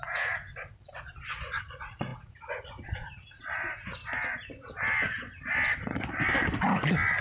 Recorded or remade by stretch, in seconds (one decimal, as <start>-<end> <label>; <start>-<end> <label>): 0.0-0.5 remade; 0.5-1.6 recorded; 1.6-4.0 remade; 4.0-7.2 recorded